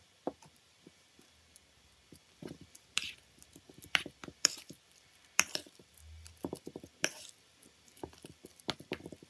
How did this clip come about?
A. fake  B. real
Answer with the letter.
A